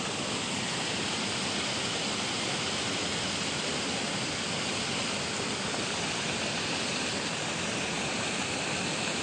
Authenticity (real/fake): fake